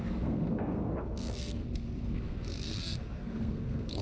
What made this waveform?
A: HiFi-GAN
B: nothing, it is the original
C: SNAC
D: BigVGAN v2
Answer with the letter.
C